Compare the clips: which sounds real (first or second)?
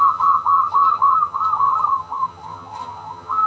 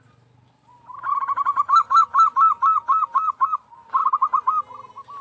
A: second